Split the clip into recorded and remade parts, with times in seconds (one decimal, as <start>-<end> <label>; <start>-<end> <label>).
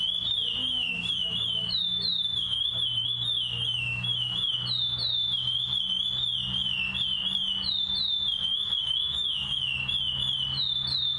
0.0-0.6 recorded; 0.6-4.5 remade; 4.5-8.5 recorded; 8.5-9.6 remade; 9.6-11.2 recorded